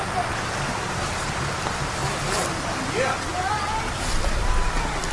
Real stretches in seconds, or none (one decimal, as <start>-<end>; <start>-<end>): 0.0-5.1